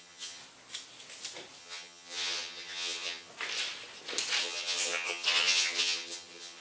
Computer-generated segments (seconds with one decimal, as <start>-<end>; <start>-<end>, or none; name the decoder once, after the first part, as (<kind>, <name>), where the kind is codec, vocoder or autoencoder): 0.0-0.4 (vocoder, HiFi-GAN); 1.6-3.3; 4.4-6.6